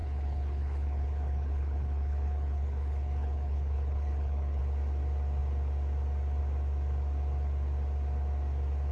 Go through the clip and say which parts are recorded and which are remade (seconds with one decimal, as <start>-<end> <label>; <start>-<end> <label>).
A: 0.0-4.6 remade; 4.6-8.9 recorded